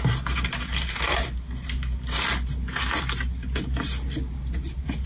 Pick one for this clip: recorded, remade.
recorded